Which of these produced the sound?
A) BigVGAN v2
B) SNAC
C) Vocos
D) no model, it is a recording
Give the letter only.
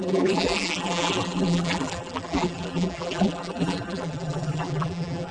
A